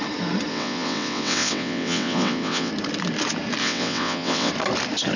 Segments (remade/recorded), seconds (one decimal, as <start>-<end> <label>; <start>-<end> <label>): 0.0-0.5 recorded; 0.5-2.7 remade; 2.7-3.6 recorded; 3.6-4.5 remade; 4.5-5.2 recorded